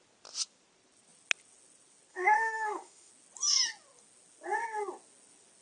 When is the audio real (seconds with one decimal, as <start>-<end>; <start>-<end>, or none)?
0.0-2.1; 3.1-5.6